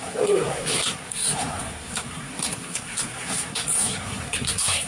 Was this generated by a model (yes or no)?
yes